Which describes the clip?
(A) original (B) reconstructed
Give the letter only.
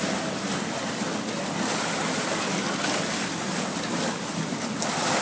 A